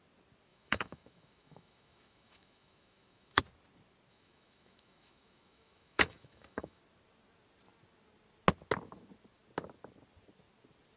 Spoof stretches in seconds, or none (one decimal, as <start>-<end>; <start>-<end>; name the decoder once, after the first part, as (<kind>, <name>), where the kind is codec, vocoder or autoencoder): 0.5-3.4 (autoencoder, DAC-VAE); 4.1-6.8